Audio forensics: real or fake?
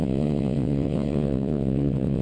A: fake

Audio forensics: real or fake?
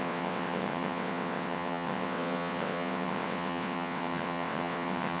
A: fake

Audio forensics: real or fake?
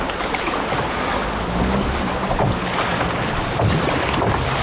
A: real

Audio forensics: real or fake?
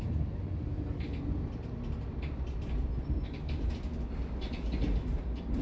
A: real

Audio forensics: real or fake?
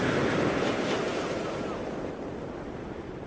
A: real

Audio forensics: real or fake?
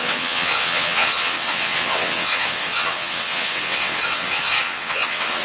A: fake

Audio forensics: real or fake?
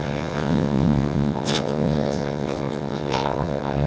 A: fake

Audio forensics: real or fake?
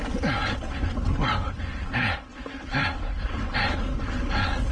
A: real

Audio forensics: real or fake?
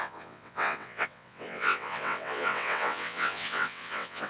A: fake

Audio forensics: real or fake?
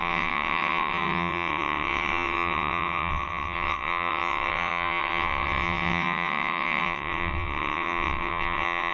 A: fake